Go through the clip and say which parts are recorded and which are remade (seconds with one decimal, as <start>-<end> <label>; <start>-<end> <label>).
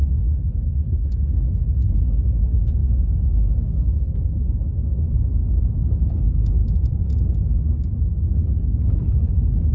0.0-7.9 remade; 7.9-8.8 recorded; 8.8-9.7 remade